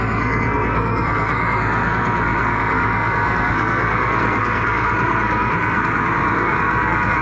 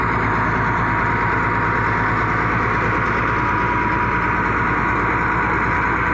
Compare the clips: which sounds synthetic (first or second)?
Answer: first